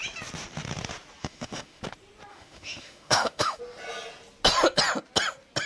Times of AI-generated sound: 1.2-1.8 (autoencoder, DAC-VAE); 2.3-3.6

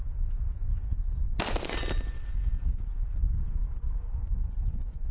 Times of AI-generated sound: 0.0-1.2 (vocoder, Vocos); 2.3-3.6; 4.6-5.1

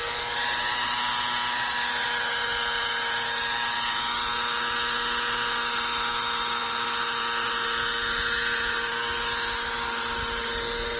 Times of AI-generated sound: none

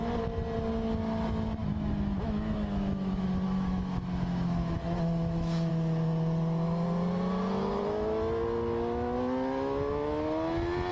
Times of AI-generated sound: 1.6-5.7 (autoencoder, DAC-VAE)

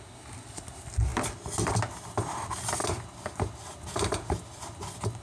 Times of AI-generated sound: none

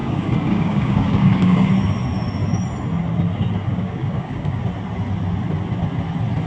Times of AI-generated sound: 0.0-1.7 (codec, DAC); 3.7-4.6

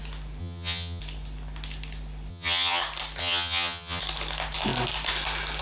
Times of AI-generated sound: 0.4-1.0 (vocoder, HiFi-GAN); 2.3-2.8; 3.2-4.0

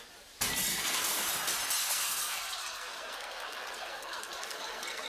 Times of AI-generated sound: 0.7-1.3 (codec, SNAC); 1.8-5.1